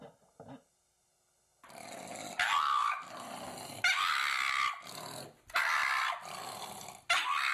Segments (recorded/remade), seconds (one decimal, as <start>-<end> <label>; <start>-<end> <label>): 0.0-7.5 recorded